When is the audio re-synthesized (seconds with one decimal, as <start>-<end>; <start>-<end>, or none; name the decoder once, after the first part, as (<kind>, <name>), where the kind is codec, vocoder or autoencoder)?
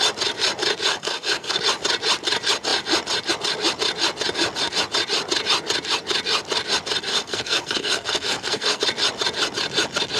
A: 0.9-1.6 (codec, SNAC); 7.1-8.8